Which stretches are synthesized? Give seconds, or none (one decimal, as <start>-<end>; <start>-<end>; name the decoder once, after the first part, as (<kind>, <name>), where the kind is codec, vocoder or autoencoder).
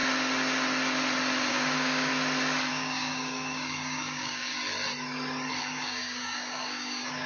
1.5-2.1 (codec, DAC); 2.7-4.5; 5.6-7.3